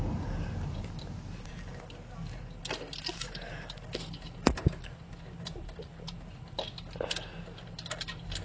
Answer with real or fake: real